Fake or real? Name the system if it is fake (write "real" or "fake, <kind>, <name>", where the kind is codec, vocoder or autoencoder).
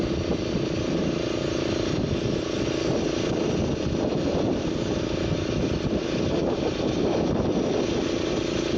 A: real